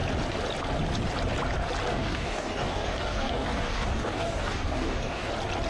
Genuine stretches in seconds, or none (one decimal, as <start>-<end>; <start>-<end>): 0.0-1.9; 5.3-5.7